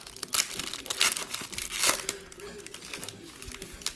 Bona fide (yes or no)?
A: yes